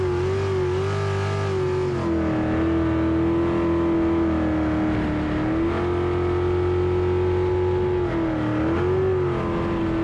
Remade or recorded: recorded